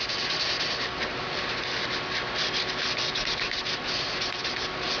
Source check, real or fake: real